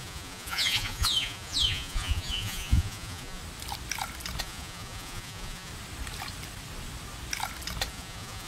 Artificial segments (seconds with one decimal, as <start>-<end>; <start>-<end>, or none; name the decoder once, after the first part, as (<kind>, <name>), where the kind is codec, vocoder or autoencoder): 0.0-3.4 (vocoder, Vocos); 4.4-5.7; 7.9-8.5